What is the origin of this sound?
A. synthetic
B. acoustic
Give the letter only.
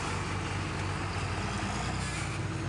B